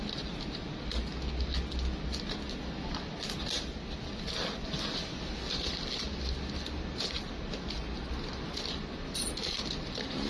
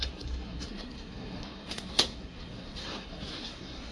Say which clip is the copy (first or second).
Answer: second